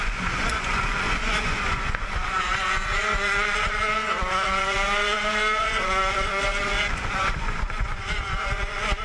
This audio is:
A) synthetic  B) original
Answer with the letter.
A